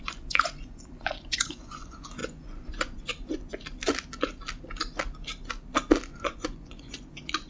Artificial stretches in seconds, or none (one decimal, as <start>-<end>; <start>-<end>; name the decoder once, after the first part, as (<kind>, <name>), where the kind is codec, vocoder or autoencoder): 0.0-3.1 (vocoder, Vocos); 6.1-7.5